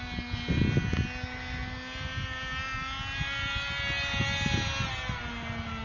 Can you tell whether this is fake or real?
real